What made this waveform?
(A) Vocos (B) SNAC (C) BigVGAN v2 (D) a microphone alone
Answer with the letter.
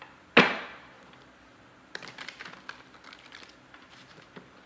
D